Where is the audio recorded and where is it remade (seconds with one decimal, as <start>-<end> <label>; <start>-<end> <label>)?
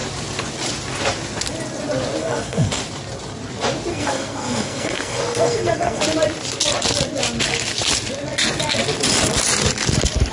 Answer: 0.0-2.2 recorded; 2.2-2.8 remade; 2.8-3.9 recorded; 3.9-6.0 remade; 6.0-10.3 recorded